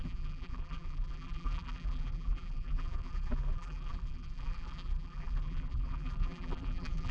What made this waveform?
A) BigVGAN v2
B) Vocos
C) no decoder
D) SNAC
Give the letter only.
A